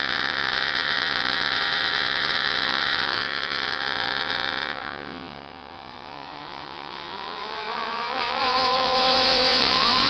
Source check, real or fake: fake